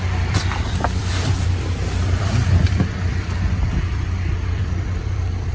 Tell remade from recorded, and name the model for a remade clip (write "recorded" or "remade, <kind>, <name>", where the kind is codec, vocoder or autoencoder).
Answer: remade, vocoder, BigVGAN v2